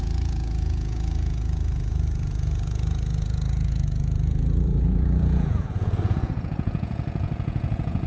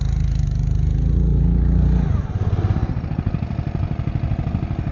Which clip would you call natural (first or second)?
second